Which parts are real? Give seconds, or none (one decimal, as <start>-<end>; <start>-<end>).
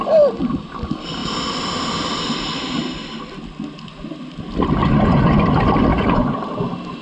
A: 0.0-4.8; 5.4-5.9; 6.6-7.0